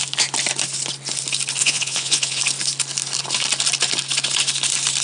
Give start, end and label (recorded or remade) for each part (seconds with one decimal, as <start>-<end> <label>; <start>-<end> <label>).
0.0-1.6 recorded; 1.6-2.4 remade; 2.4-5.0 recorded